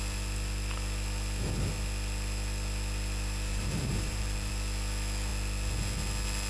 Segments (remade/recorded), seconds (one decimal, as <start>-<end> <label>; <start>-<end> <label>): 0.0-3.5 recorded; 3.5-4.5 remade; 4.5-6.5 recorded